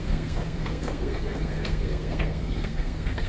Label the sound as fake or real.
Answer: fake